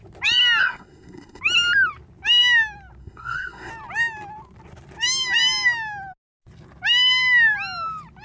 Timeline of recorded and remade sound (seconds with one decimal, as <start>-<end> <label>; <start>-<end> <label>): 0.0-0.6 recorded; 0.6-1.4 remade; 1.4-3.0 recorded; 3.0-3.7 remade; 3.7-8.2 recorded